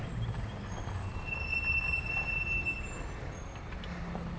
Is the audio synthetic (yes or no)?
no